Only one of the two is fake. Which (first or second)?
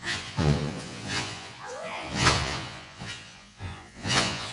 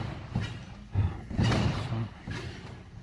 first